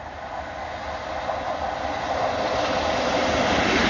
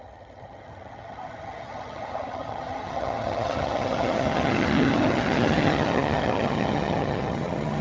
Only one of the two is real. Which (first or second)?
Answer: first